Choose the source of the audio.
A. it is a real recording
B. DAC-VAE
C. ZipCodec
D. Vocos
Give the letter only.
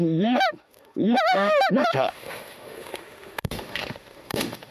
B